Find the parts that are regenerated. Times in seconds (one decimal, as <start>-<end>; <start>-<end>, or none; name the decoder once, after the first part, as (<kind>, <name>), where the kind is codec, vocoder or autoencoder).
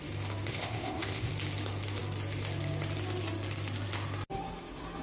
0.5-1.3 (codec, ZipCodec)